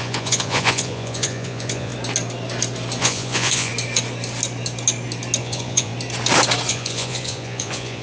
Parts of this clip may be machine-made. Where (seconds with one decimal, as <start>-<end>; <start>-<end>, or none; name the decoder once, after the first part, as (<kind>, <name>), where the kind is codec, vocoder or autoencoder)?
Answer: 0.0-1.9 (vocoder, Vocos); 3.0-3.7; 5.4-5.9; 6.7-8.0